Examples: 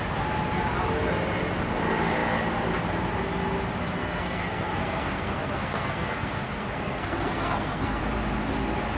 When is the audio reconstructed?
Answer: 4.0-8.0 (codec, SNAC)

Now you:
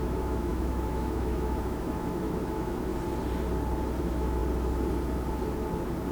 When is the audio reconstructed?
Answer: 0.0-2.9 (autoencoder, DAC-VAE); 4.0-4.4

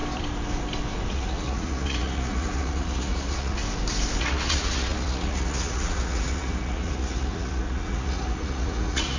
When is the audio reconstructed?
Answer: 1.1-3.6 (vocoder, Vocos); 4.2-9.2

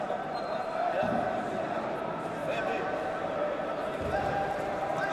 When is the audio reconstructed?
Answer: 2.4-5.1 (vocoder, BigVGAN v2)

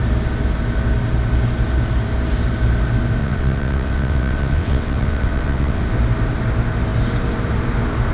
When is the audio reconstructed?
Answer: 3.2-5.8 (vocoder, WaveNeXt)

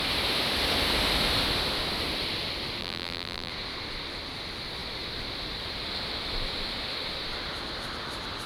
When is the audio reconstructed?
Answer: 2.8-3.5 (vocoder, BigVGAN v2)

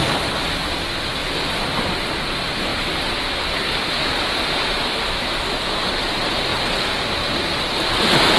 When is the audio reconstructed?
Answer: 1.2-2.1 (vocoder, BigVGAN v2)